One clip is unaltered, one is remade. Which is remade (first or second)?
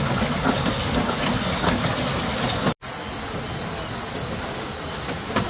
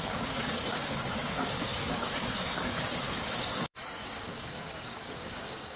second